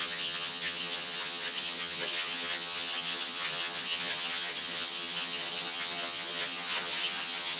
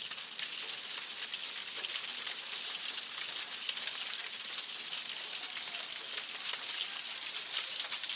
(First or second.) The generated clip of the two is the first